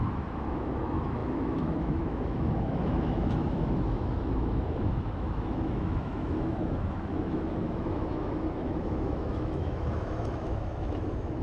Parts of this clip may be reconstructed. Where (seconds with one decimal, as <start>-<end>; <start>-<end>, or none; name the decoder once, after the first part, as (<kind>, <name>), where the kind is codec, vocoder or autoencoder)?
0.0-11.4 (autoencoder, DAC-VAE)